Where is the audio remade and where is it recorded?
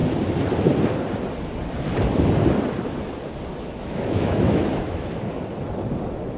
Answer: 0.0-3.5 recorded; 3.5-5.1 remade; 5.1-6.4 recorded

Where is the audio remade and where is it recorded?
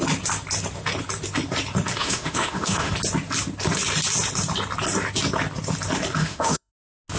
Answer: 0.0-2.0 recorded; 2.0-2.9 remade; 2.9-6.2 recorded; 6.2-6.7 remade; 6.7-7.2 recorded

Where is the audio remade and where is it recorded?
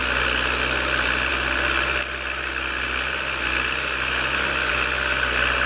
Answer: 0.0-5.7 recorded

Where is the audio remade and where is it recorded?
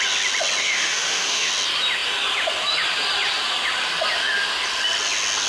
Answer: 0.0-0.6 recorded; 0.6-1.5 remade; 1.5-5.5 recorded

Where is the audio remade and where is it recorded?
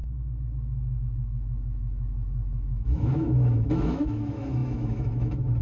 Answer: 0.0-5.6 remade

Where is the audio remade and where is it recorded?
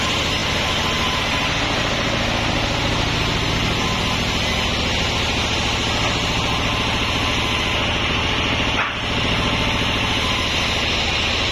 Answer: 0.0-11.5 recorded